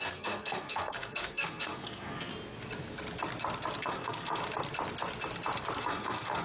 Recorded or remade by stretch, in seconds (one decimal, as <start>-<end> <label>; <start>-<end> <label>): 0.0-2.3 remade; 2.3-3.8 recorded; 3.8-4.4 remade; 4.4-5.8 recorded; 5.8-6.4 remade